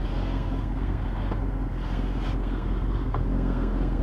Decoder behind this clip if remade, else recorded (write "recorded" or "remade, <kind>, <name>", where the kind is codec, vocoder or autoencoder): remade, codec, SNAC